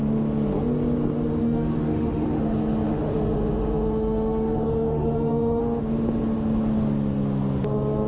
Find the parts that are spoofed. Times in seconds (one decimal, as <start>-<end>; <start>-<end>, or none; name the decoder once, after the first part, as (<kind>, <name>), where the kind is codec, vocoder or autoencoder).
1.4-5.6 (autoencoder, DAC-VAE)